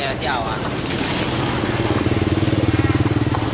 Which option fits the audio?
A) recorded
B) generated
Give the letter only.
B